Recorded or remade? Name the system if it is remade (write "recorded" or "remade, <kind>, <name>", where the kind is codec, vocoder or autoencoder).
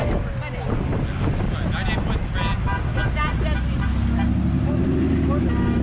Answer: recorded